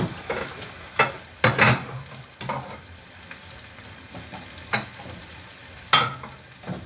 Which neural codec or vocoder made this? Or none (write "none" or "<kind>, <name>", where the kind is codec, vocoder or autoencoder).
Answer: none